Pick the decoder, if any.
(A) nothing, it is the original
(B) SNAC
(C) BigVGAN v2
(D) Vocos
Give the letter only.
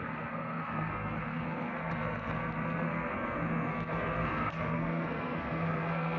B